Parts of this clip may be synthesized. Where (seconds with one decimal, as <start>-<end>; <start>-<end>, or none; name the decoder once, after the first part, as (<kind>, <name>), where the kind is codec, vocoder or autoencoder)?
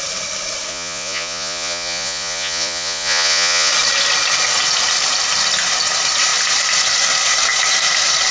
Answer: 0.7-3.7 (vocoder, Vocos)